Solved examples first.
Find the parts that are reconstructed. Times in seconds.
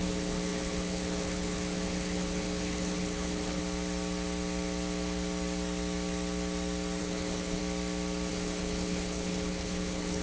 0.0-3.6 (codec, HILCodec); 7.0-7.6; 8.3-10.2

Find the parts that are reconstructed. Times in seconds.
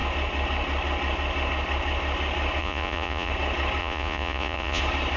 2.6-3.3 (vocoder, Vocos); 3.8-4.8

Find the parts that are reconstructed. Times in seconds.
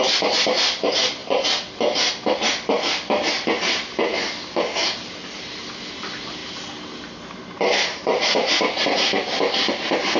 none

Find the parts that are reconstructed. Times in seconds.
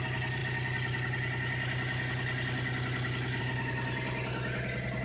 none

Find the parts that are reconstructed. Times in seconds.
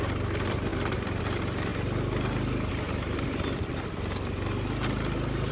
none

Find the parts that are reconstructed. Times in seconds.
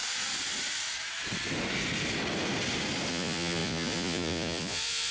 3.1-5.1 (vocoder, Vocos)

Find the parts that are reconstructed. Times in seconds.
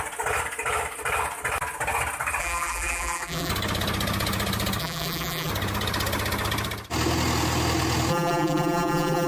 2.4-3.5 (vocoder, BigVGAN v2); 4.8-5.5; 8.1-9.3